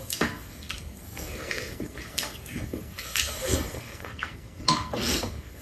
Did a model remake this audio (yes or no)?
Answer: yes